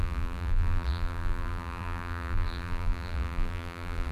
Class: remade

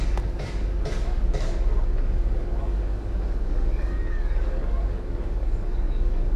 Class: remade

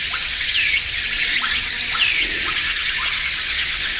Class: remade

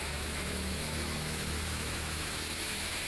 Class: remade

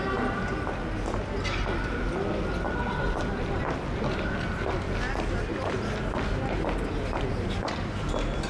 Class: recorded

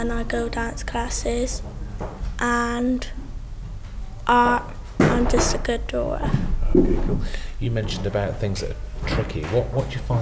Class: recorded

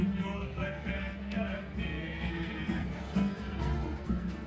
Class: remade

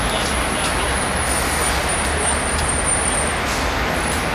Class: recorded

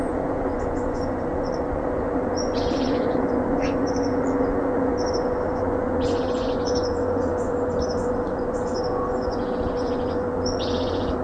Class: remade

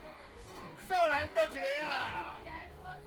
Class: remade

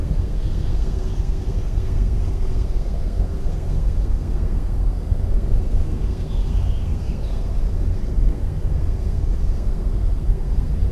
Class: remade